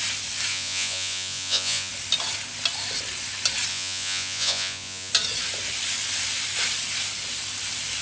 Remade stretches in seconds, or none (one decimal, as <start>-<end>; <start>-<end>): 0.5-1.9; 3.7-5.1